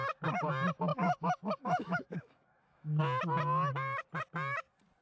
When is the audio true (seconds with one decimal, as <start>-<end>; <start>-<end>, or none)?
0.0-0.9; 3.0-5.0